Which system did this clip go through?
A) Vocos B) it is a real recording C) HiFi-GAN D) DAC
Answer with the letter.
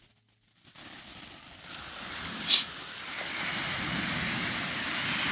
B